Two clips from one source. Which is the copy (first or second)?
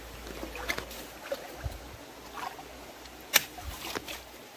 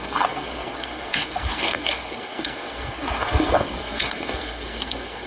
second